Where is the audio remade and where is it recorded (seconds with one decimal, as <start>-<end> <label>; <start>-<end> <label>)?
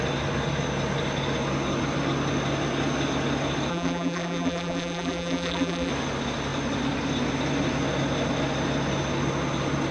0.0-3.7 recorded; 3.7-5.9 remade; 5.9-9.9 recorded